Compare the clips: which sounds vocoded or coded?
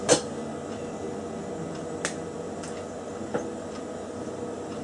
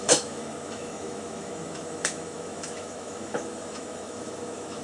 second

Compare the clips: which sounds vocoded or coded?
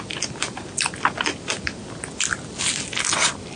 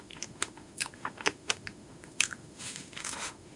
second